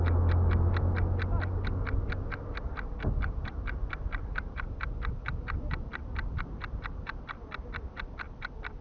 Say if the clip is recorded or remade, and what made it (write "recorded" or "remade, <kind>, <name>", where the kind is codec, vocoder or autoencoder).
recorded